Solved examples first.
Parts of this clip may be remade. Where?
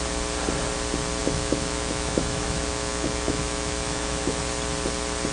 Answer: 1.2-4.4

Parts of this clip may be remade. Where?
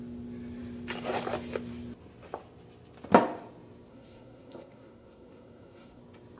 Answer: 3.9-6.0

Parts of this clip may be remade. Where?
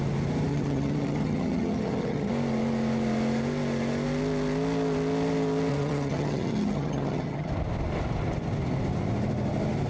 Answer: 0.5-2.3; 5.7-7.5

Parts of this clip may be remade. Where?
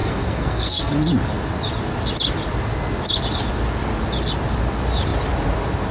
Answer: 0.0-0.9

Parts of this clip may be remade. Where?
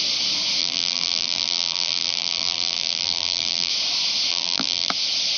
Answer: 0.6-3.7; 4.3-4.9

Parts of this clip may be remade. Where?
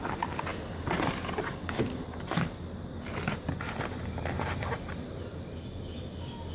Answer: none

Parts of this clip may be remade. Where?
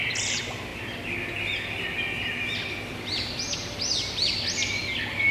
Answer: none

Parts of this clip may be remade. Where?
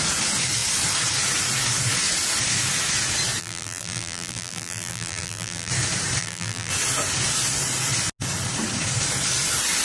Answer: 3.4-5.7; 6.2-6.7